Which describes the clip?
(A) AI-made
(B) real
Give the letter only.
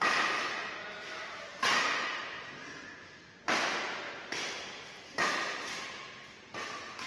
B